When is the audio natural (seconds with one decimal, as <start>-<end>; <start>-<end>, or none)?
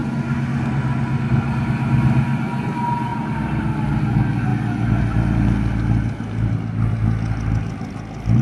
1.2-8.4